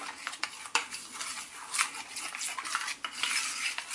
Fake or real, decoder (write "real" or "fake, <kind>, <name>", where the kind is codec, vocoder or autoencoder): real